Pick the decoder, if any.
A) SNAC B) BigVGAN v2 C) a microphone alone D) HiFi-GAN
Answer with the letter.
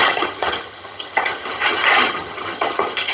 D